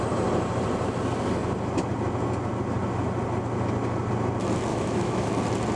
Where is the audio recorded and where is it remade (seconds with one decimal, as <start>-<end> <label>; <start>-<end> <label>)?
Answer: 0.0-4.7 recorded; 4.7-5.3 remade; 5.3-5.8 recorded